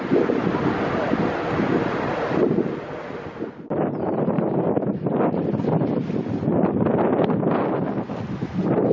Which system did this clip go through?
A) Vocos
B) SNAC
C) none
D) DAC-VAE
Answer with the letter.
C